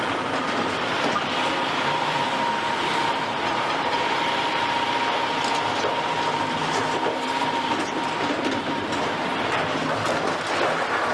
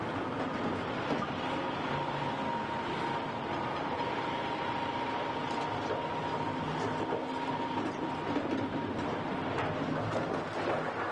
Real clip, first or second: second